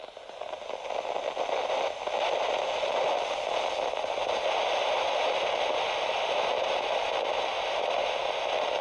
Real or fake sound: real